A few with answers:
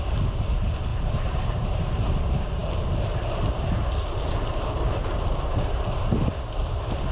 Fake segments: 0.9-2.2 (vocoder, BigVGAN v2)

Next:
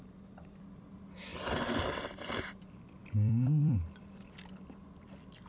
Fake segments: 1.3-1.8 (vocoder, BigVGAN v2); 3.0-4.0

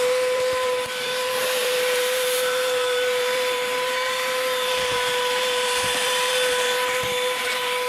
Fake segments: 0.0-7.9 (vocoder, BigVGAN v2)

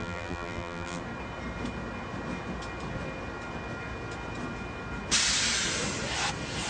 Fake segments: 0.0-1.0 (vocoder, BigVGAN v2)

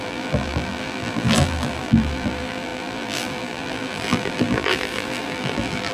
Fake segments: 0.0-5.9 (vocoder, BigVGAN v2)

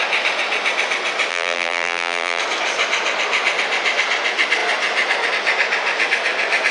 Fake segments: 1.3-2.4 (vocoder, BigVGAN v2)

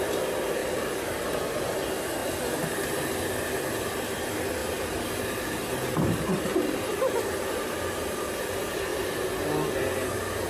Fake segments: 0.6-1.2 (vocoder, BigVGAN v2); 4.6-8.3

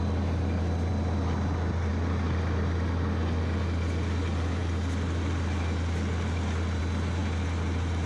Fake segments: none